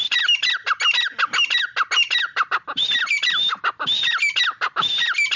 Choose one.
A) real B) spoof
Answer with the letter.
A